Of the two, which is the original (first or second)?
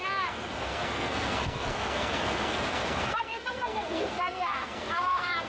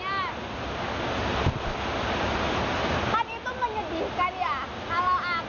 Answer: second